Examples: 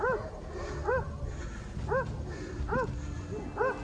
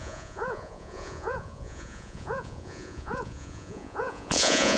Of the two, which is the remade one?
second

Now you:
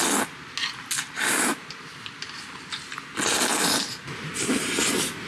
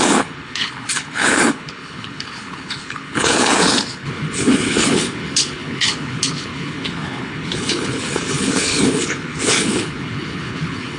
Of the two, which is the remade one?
second